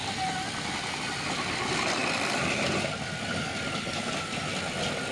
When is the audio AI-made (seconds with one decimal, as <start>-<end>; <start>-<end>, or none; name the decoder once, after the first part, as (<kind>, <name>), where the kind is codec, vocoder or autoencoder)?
none

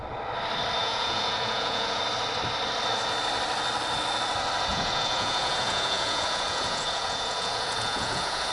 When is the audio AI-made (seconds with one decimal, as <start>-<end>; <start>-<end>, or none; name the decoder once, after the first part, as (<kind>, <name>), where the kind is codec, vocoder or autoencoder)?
0.8-2.0 (vocoder, Vocos); 4.7-8.5

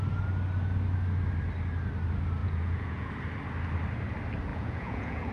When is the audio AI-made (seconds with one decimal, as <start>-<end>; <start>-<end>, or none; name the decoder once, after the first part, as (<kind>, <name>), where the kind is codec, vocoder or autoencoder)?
2.4-3.1 (vocoder, Vocos); 4.5-5.3

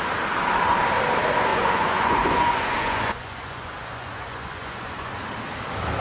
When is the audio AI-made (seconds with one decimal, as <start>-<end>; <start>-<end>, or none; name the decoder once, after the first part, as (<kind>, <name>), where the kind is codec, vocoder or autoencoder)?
1.5-5.1 (vocoder, Vocos)

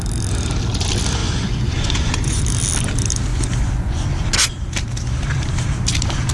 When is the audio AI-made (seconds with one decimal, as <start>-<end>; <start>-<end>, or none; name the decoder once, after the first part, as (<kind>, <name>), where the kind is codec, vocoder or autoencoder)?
1.2-2.4 (vocoder, Vocos); 3.3-4.1